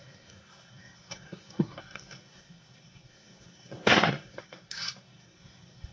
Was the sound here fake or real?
fake